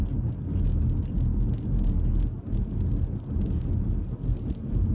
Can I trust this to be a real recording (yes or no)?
yes